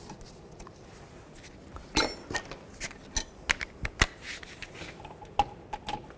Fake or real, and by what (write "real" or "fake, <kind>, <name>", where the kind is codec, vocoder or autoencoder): real